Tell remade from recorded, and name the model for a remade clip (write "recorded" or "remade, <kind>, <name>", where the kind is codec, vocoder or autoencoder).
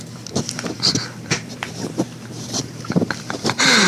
remade, vocoder, BigVGAN v2